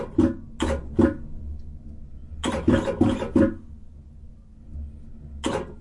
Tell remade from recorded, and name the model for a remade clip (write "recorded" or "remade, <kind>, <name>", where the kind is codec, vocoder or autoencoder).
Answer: recorded